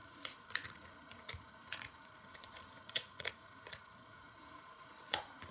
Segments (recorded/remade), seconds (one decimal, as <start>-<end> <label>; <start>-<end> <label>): 0.0-5.5 remade